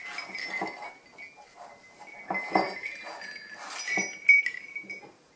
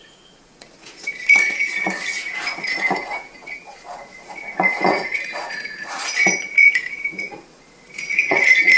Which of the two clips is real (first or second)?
first